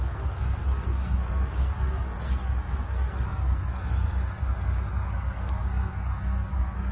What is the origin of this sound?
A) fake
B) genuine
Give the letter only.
A